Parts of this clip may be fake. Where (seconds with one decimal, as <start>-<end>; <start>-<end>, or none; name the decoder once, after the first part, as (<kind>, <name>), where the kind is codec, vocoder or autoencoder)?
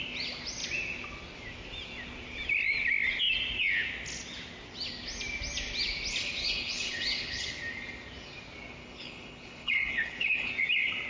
6.4-7.5 (codec, HILCodec); 8.8-10.5